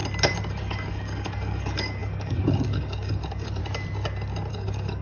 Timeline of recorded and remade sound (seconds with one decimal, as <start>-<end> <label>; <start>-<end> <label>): 0.0-0.5 recorded; 0.5-3.6 remade; 3.6-4.5 recorded; 4.5-5.0 remade